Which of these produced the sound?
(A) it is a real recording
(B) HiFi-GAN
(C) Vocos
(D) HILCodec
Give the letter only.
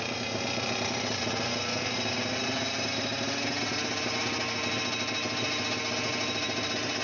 A